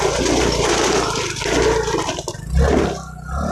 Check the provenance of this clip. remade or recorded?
recorded